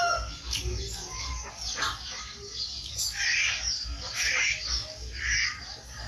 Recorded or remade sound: remade